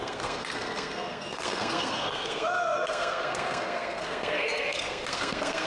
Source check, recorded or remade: remade